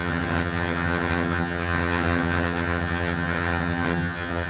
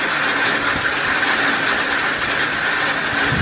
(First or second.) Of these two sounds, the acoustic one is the second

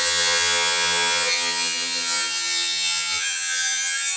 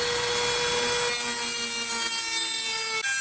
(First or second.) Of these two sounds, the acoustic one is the second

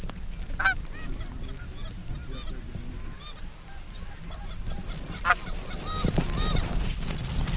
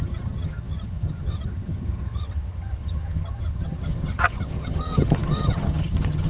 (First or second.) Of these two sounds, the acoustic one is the first